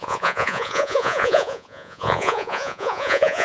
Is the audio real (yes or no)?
no